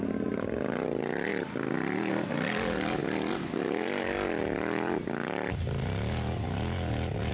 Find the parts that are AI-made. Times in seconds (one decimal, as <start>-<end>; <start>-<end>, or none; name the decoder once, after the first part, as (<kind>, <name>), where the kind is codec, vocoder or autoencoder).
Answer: none

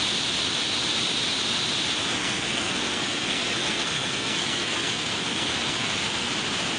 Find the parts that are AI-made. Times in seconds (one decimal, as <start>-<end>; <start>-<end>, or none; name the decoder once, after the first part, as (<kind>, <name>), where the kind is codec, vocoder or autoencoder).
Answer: 2.2-6.3 (codec, SNAC)

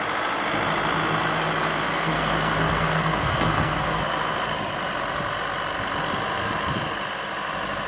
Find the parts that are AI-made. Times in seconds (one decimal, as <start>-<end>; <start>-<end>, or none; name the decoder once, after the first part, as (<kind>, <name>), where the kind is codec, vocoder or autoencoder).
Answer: 1.9-4.0 (codec, SNAC)

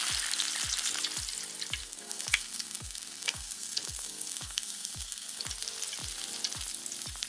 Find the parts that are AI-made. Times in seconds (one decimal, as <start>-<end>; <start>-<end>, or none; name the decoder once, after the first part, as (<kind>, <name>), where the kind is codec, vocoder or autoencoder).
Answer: 1.8-5.4 (codec, SNAC)

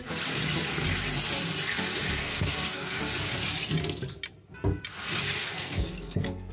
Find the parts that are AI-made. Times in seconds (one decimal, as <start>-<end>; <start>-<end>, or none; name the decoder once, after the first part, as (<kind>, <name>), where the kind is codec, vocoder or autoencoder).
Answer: 2.2-3.0 (codec, SNAC); 5.4-6.5